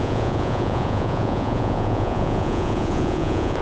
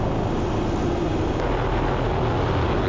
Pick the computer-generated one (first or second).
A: first